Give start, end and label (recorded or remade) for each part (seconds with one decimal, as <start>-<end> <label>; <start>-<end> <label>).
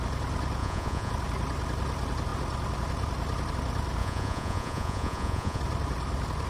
0.0-0.6 recorded; 0.6-1.1 remade; 1.1-4.0 recorded; 4.0-5.6 remade; 5.6-6.5 recorded